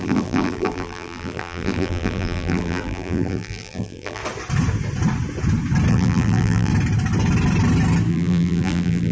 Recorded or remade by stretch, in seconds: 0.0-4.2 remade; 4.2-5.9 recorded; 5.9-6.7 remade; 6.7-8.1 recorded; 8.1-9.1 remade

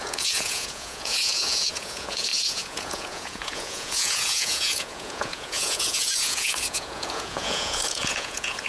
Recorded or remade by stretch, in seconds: 0.0-8.7 remade